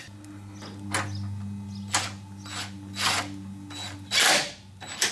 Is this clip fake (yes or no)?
no